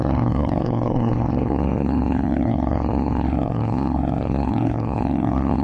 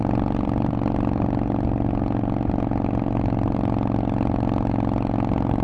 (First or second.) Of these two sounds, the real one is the second